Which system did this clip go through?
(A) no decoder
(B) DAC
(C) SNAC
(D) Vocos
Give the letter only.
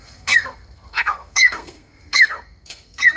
C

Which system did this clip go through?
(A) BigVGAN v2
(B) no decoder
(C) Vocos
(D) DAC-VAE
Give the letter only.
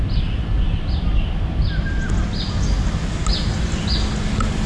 B